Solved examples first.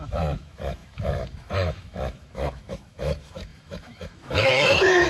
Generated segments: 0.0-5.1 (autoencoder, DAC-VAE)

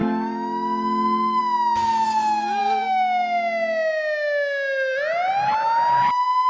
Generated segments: 0.0-1.4 (autoencoder, DAC-VAE)

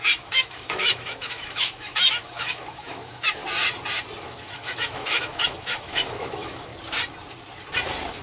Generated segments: 0.0-3.4 (autoencoder, DAC-VAE); 4.2-6.7

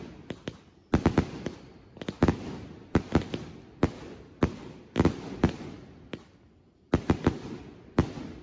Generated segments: none

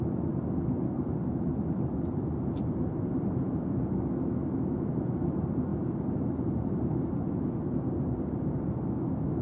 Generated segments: 1.3-1.8 (autoencoder, DAC-VAE)